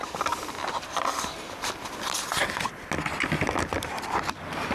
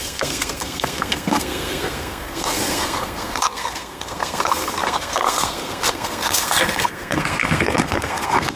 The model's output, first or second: second